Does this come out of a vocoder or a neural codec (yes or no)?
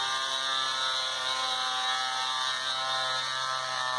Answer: no